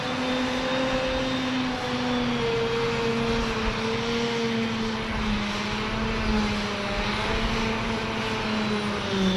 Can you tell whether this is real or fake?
real